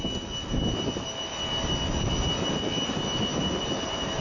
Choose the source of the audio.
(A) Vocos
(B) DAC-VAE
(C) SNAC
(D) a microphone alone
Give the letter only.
D